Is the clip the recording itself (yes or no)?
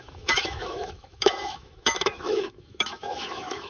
no